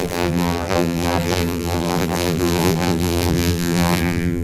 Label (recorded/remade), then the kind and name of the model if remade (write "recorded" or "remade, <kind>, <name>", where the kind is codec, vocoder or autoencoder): remade, vocoder, BigVGAN v2